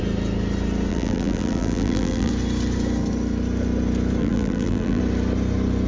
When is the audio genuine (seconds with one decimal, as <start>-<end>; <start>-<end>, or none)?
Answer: 0.0-0.9; 2.3-4.2; 5.0-5.9